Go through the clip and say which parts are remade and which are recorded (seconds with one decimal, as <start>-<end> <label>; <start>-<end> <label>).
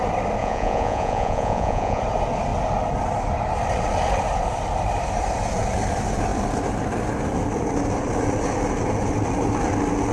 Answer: 0.0-0.4 recorded; 0.4-2.0 remade; 2.0-10.1 recorded